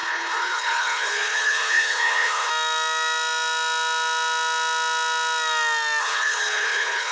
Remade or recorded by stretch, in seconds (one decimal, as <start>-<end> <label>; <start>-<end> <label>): 0.0-2.5 remade; 2.5-6.0 recorded; 6.0-7.1 remade